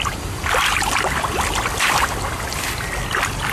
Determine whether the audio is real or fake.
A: real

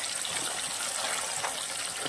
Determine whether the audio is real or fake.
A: real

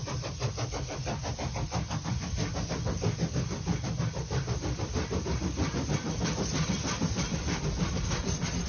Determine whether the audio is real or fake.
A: real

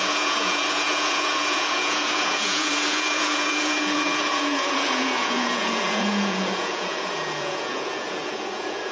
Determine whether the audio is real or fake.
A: fake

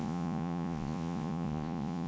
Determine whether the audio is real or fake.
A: fake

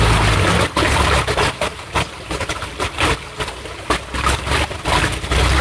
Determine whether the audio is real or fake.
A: real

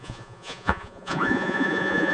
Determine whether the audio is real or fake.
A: fake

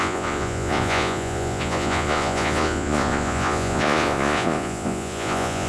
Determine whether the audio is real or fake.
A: fake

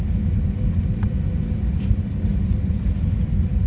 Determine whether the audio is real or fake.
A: real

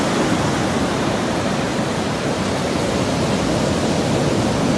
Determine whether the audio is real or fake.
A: real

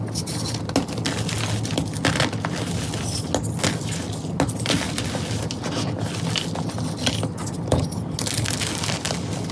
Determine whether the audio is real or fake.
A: real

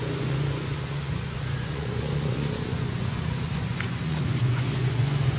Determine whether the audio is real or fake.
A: fake